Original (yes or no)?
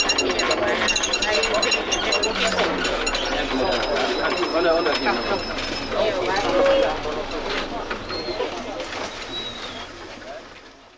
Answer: yes